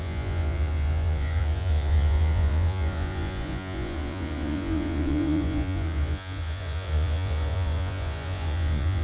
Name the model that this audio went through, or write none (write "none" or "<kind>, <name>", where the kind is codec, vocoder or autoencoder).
vocoder, Vocos